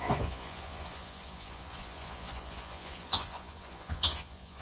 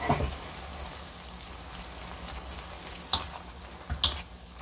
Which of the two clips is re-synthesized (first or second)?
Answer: first